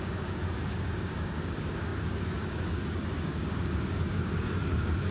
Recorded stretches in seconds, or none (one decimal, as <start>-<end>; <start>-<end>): none